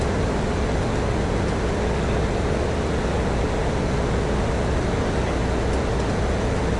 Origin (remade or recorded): recorded